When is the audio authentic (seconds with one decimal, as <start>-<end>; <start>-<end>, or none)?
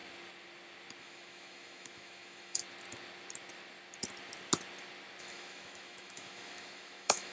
0.0-1.0; 2.6-5.2